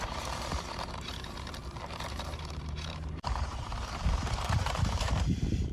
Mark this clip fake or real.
fake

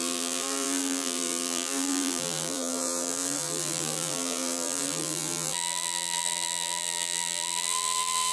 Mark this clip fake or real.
fake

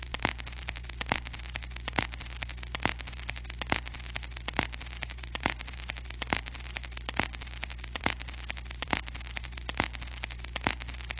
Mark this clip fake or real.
fake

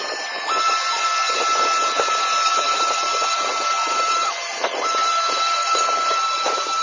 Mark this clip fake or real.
fake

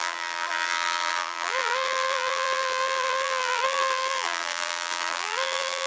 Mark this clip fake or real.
fake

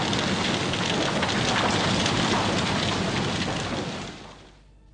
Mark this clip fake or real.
real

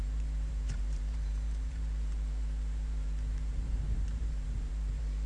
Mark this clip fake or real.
fake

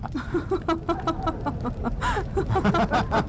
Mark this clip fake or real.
real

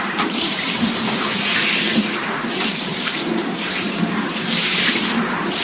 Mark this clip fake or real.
fake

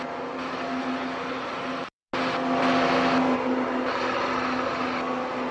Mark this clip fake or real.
real